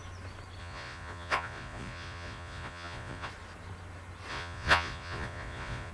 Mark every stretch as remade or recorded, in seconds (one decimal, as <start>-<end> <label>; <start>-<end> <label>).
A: 0.0-0.6 recorded; 0.6-3.3 remade; 3.3-4.3 recorded; 4.3-5.9 remade